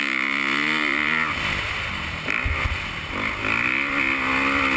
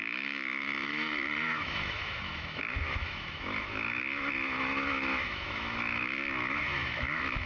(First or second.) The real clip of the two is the first